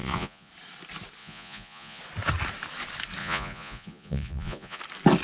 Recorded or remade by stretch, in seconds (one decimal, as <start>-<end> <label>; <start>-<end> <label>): 0.0-0.5 remade; 0.5-1.2 recorded; 1.2-2.0 remade; 2.0-3.2 recorded; 3.2-4.8 remade; 4.8-5.2 recorded